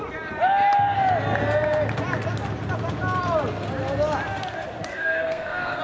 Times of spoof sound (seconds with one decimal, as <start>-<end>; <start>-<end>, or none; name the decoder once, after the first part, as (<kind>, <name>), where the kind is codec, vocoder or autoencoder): 4.9-5.8 (codec, SNAC)